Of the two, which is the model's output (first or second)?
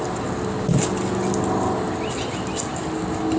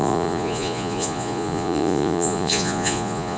second